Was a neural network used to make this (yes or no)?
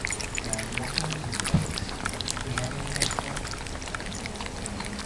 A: no